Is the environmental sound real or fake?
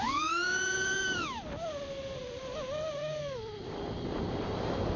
real